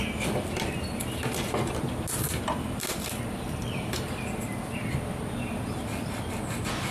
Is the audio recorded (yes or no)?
yes